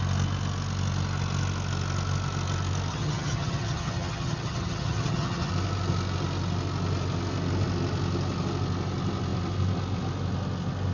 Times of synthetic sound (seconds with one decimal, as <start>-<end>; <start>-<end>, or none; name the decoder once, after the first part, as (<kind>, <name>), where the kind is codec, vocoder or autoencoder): 2.9-5.5 (vocoder, HiFi-GAN)

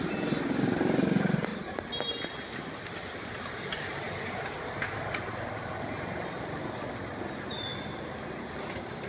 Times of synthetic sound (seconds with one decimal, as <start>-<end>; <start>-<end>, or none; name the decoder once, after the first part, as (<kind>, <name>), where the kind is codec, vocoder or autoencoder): none

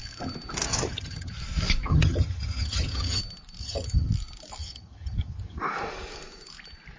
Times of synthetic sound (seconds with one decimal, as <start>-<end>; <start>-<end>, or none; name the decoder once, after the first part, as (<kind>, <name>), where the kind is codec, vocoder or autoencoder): 0.7-1.3 (vocoder, HiFi-GAN); 1.9-3.2; 3.6-4.1; 4.6-5.6

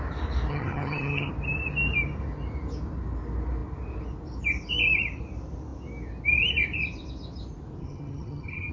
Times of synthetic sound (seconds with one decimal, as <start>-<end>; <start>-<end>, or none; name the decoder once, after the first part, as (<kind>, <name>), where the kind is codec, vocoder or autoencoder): 0.5-1.3 (vocoder, HiFi-GAN); 7.8-8.7

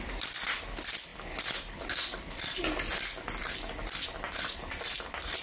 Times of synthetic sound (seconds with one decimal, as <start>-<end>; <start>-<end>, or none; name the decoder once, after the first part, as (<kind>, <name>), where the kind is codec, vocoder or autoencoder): none

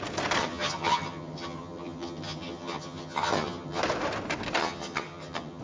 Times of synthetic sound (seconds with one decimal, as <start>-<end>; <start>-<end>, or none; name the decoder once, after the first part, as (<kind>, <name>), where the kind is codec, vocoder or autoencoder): 0.4-3.8 (vocoder, HiFi-GAN); 4.6-5.6

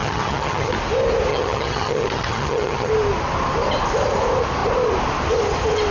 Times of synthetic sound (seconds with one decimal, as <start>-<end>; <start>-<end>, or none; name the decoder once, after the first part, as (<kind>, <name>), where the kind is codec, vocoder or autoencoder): 0.0-0.7 (vocoder, HiFi-GAN); 1.3-2.9